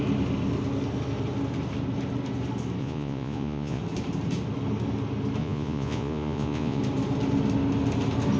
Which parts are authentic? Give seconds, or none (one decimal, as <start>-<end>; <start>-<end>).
0.0-2.8; 3.8-5.4; 6.8-8.4